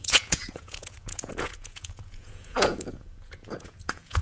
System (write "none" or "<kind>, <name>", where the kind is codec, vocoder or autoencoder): vocoder, Vocos